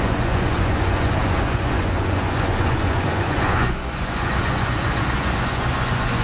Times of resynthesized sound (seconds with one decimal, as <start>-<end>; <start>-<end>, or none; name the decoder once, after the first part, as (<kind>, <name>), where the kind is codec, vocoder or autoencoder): 0.0-6.2 (vocoder, Vocos)